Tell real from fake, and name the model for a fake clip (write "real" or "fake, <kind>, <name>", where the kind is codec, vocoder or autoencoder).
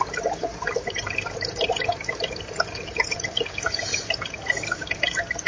fake, vocoder, BigVGAN v2